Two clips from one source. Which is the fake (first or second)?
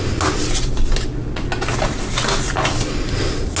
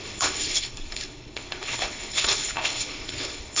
second